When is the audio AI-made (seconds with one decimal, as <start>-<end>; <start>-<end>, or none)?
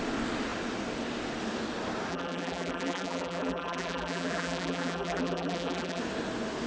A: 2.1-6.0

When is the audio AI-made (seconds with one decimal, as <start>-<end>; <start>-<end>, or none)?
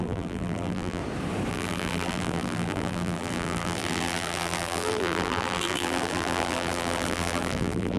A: 0.0-1.0; 1.5-8.0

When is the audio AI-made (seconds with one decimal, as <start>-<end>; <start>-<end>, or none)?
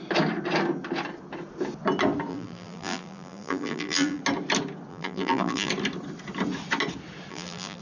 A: 2.3-4.2; 4.9-5.7; 7.3-7.8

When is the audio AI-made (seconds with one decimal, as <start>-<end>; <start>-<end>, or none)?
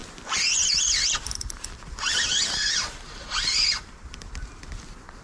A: 2.7-4.8